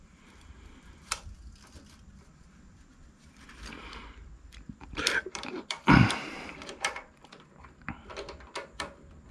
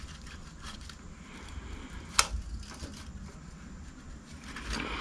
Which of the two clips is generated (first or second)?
first